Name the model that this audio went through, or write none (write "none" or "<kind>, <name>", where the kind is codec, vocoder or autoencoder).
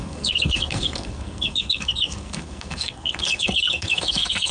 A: codec, SNAC